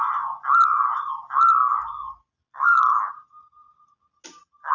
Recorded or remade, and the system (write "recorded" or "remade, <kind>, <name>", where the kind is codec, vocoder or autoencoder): recorded